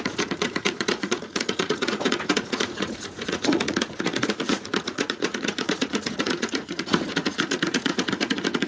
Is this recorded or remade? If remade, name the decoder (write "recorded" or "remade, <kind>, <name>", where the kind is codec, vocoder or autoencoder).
remade, vocoder, Vocos